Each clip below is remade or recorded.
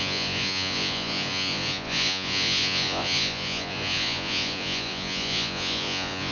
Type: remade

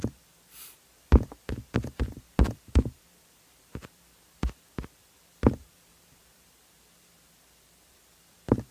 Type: remade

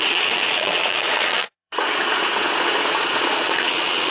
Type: remade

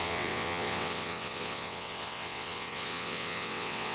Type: remade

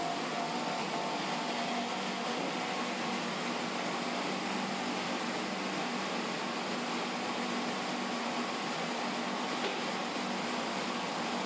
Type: recorded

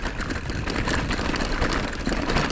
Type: recorded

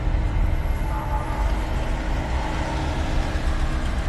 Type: recorded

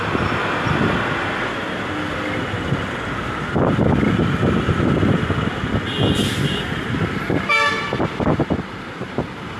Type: recorded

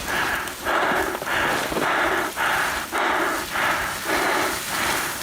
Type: recorded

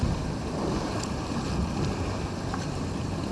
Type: recorded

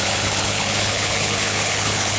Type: remade